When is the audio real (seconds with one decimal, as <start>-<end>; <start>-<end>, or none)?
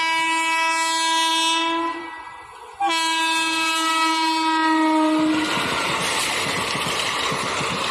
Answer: 0.0-7.9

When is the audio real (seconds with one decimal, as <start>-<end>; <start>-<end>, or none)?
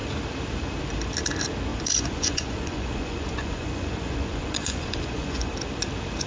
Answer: 0.0-1.7; 5.5-6.3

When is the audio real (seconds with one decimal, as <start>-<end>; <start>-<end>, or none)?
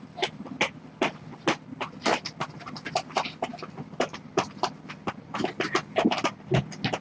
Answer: 0.0-7.0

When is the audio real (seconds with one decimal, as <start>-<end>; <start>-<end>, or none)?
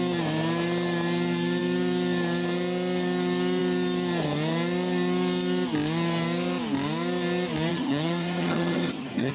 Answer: 0.0-7.7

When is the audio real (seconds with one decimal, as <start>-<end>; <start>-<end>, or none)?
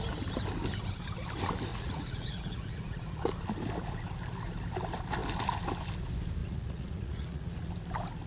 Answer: 0.0-1.7; 3.3-6.4; 7.7-8.3